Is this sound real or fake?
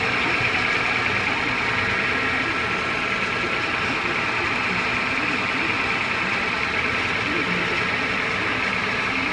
real